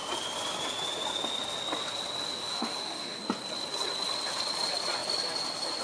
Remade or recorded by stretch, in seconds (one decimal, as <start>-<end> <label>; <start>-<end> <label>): 0.0-2.4 recorded; 2.4-3.2 remade; 3.2-5.8 recorded